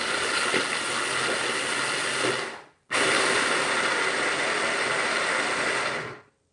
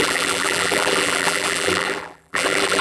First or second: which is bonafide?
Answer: first